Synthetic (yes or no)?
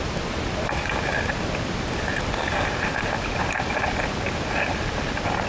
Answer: yes